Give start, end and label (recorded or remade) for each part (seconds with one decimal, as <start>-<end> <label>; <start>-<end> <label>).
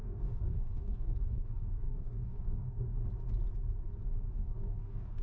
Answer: 0.0-3.0 remade; 3.0-4.3 recorded; 4.3-5.2 remade